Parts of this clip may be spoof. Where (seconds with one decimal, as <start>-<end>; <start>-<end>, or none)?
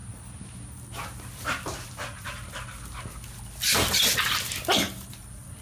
none